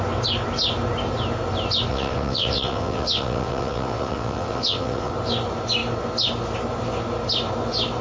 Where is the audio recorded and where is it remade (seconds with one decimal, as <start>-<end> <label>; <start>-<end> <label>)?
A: 0.0-1.9 recorded; 1.9-5.1 remade; 5.1-8.0 recorded